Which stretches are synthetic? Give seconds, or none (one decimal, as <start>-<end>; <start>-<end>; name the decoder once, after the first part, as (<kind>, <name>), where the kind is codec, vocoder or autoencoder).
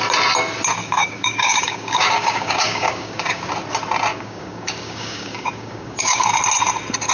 0.8-3.4 (codec, DAC); 4.1-6.3